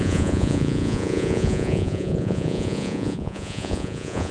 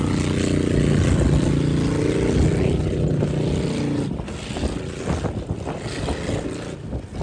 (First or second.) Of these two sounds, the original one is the second